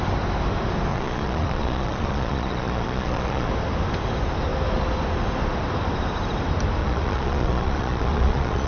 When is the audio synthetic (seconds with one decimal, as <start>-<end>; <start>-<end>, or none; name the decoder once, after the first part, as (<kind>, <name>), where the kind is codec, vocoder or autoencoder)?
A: 0.9-3.5 (vocoder, Vocos); 6.8-8.7